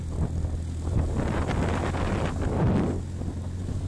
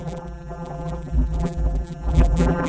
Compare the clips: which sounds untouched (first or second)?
first